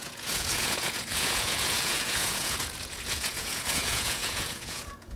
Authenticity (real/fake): fake